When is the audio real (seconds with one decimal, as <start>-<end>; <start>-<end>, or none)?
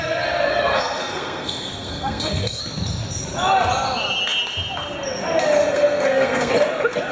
0.0-0.5; 2.6-5.6; 6.5-7.1